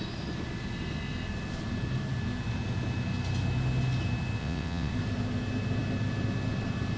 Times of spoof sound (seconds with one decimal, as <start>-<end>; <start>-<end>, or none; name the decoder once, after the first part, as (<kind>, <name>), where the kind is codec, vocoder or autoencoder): 4.4-4.9 (vocoder, WaveNeXt)